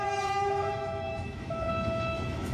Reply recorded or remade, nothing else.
remade